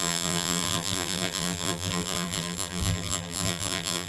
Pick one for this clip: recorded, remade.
remade